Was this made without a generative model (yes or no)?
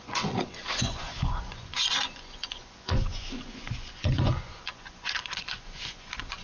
no